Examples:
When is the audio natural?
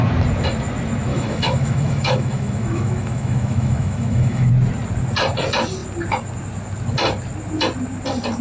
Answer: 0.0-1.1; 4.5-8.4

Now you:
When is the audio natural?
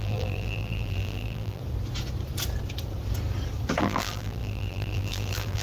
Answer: 1.6-3.8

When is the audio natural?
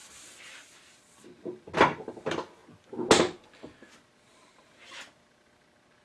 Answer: 0.0-6.0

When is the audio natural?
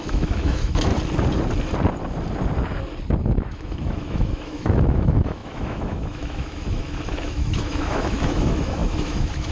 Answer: 0.9-3.2